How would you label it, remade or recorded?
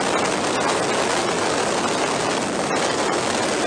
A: recorded